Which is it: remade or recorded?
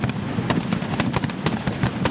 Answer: recorded